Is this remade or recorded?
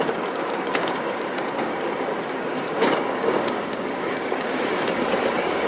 remade